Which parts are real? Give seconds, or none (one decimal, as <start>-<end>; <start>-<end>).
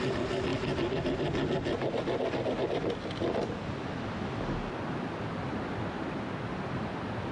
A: 0.0-7.3